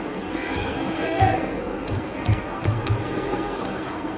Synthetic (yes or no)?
yes